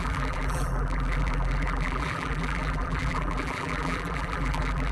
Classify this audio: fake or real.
fake